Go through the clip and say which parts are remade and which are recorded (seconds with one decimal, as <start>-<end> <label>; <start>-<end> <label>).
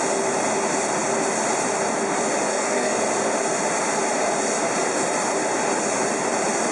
0.0-2.5 recorded; 2.5-3.0 remade; 3.0-6.7 recorded